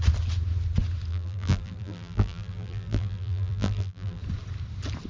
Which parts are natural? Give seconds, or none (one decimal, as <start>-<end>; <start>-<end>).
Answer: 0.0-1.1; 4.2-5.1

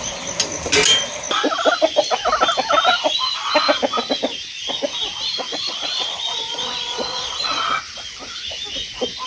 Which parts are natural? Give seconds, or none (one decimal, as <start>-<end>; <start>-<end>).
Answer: 0.0-5.5; 7.8-9.3

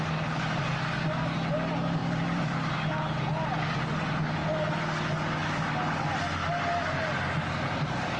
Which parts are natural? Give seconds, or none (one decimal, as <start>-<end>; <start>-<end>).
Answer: 0.0-2.0; 2.7-8.2

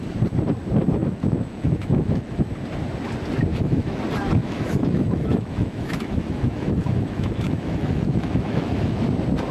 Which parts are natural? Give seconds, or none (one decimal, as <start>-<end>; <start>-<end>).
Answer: 0.0-1.0; 2.4-3.5; 4.0-4.4; 9.0-9.5

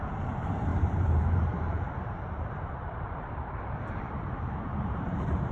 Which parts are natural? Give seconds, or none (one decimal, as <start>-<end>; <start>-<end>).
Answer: none

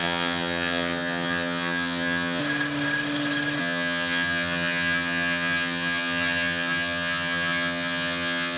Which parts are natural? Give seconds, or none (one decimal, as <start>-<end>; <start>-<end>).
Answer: 2.4-3.6